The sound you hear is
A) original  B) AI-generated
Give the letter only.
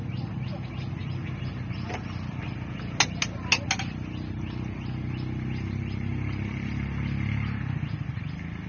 A